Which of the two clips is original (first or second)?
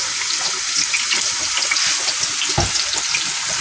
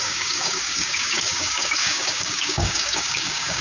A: first